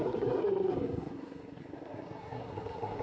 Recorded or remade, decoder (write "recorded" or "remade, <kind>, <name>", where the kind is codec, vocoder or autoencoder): remade, codec, SNAC